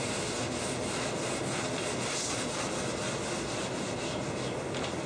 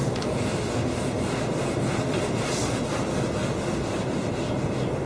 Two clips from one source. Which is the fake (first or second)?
second